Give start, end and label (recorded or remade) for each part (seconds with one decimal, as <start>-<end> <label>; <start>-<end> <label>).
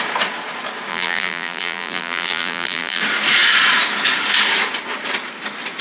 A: 0.0-0.9 recorded; 0.9-3.0 remade; 3.0-5.8 recorded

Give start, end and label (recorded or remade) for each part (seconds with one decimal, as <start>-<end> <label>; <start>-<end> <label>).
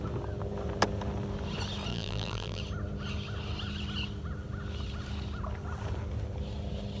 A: 0.0-1.9 recorded; 1.9-2.6 remade; 2.6-7.0 recorded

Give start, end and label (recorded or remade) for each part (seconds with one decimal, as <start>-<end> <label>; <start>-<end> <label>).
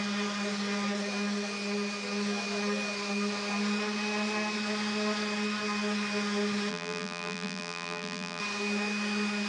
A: 0.0-6.7 recorded; 6.7-8.4 remade; 8.4-9.5 recorded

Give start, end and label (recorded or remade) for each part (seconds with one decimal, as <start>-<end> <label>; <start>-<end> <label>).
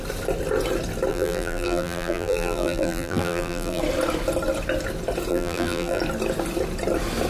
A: 0.0-1.1 recorded; 1.1-3.8 remade; 3.8-5.3 recorded; 5.3-6.0 remade; 6.0-7.3 recorded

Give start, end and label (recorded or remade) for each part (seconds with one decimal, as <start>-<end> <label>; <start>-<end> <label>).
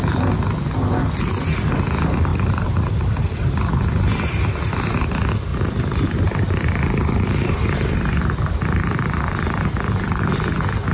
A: 0.0-2.3 recorded; 2.3-3.7 remade; 3.7-5.5 recorded; 5.5-10.3 remade; 10.3-10.9 recorded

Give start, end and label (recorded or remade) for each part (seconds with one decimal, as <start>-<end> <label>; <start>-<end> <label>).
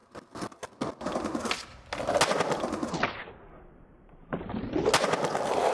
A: 0.0-3.9 recorded; 3.9-4.7 remade; 4.7-5.7 recorded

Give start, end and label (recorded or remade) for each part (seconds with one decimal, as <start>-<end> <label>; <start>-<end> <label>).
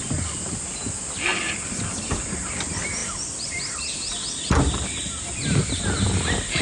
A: 0.0-1.3 recorded; 1.3-2.1 remade; 2.1-3.0 recorded; 3.0-5.8 remade; 5.8-6.6 recorded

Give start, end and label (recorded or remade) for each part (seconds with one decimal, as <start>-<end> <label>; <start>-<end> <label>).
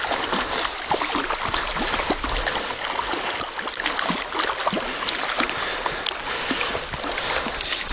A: 0.0-5.7 recorded; 5.7-6.3 remade; 6.3-7.9 recorded